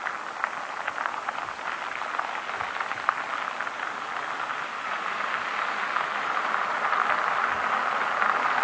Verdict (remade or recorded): recorded